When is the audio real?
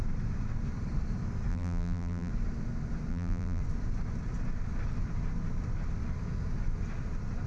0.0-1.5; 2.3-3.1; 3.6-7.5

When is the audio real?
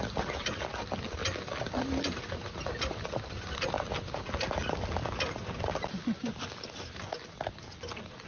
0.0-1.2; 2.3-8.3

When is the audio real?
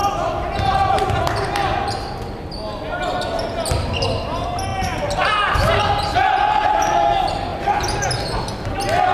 0.0-9.1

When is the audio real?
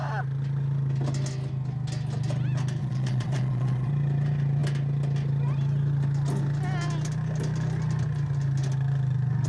0.0-2.8; 3.9-9.5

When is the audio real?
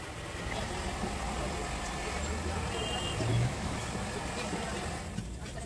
0.0-3.3; 3.8-5.7